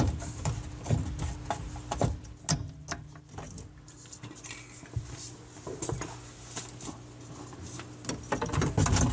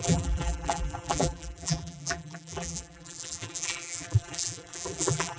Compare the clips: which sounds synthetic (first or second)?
second